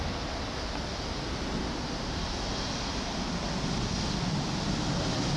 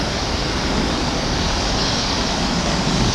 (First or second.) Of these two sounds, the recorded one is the first